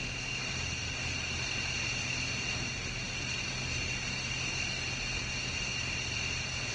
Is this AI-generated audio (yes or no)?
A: no